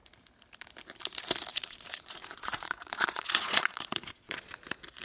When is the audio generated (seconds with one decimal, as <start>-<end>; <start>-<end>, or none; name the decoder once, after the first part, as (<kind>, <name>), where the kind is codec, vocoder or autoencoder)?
1.5-4.5 (vocoder, Vocos)